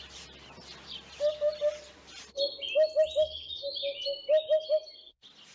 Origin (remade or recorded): recorded